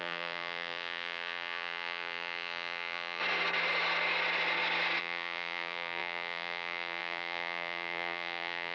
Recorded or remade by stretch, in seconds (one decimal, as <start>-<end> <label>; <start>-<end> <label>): 0.0-3.2 remade; 3.2-5.0 recorded; 5.0-8.7 remade